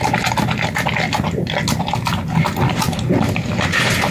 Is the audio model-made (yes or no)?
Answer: no